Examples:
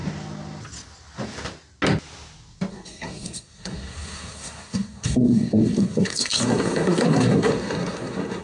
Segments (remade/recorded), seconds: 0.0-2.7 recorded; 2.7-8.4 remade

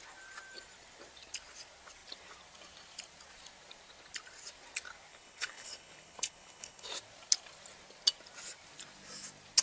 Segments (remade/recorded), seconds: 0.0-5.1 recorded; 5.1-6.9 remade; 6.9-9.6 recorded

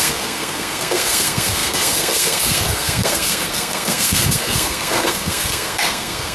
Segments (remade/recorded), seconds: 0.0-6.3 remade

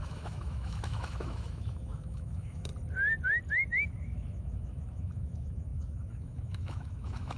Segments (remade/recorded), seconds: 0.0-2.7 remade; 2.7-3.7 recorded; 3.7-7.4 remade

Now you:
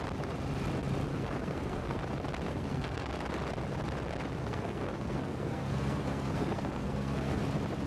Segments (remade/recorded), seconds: 0.0-1.1 recorded; 1.1-2.0 remade; 2.0-2.5 recorded; 2.5-3.1 remade; 3.1-4.4 recorded; 4.4-7.4 remade; 7.4-7.9 recorded